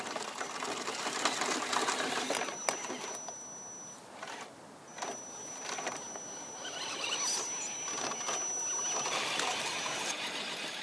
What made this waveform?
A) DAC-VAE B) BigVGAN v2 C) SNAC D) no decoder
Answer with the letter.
D